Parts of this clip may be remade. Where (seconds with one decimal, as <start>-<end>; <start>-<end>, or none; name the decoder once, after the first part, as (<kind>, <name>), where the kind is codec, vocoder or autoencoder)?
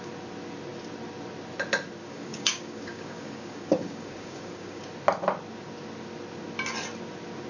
2.0-4.8 (codec, DAC)